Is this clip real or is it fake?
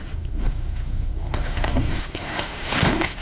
fake